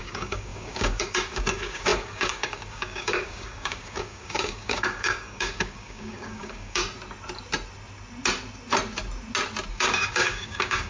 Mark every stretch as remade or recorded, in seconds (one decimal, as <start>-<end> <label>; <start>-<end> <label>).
0.0-6.8 remade; 6.8-9.7 recorded; 9.7-10.9 remade